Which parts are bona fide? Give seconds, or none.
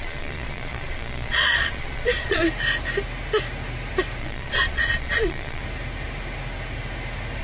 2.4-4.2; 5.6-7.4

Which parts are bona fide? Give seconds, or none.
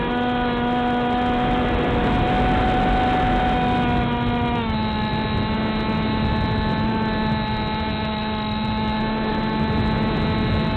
0.0-10.8